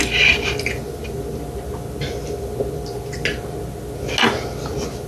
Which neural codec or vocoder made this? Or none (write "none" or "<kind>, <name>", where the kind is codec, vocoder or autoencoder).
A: none